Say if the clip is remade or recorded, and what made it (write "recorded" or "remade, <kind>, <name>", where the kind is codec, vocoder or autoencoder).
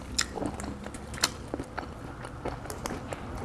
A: recorded